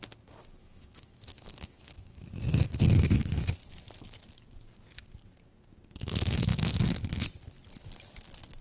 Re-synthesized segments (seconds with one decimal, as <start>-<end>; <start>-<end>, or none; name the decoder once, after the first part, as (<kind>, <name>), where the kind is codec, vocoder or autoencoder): 0.6-3.5 (autoencoder, DAC-VAE)